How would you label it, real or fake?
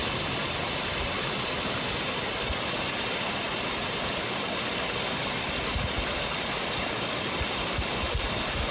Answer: real